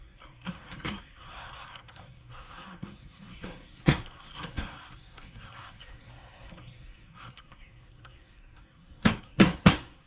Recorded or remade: remade